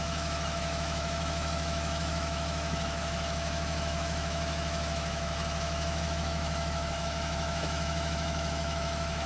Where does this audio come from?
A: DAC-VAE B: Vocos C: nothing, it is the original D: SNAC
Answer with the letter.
A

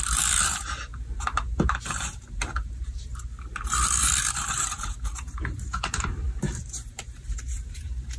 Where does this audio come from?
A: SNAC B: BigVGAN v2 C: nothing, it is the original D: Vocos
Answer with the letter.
B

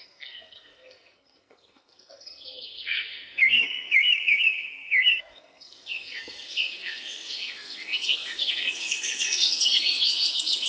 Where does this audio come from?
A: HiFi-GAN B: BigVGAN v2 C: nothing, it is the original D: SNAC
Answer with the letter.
D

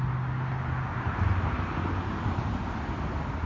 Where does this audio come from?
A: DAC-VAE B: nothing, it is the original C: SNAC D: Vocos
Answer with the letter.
B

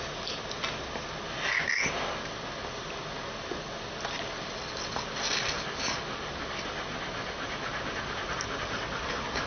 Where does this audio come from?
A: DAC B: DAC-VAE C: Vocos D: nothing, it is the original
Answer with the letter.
D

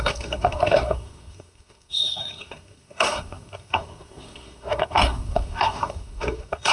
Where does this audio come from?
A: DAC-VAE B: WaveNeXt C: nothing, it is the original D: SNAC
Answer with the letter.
D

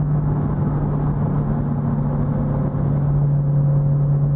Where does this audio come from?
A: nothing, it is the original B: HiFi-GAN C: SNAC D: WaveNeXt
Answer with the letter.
A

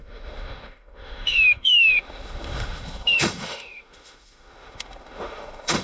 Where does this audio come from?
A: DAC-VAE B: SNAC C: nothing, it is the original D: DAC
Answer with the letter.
A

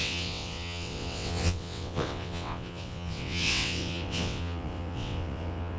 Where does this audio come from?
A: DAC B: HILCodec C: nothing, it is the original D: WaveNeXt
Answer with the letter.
D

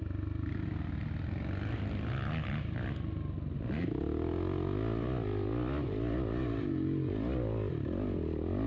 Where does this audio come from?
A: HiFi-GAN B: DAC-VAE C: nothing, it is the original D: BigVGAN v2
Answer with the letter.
C